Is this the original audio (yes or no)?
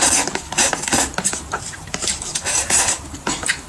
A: no